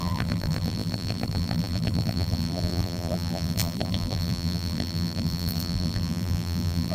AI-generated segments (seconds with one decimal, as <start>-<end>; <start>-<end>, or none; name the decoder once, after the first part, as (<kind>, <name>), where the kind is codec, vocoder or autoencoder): 0.0-6.9 (vocoder, BigVGAN v2)